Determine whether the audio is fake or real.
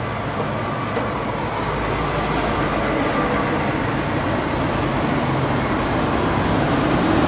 real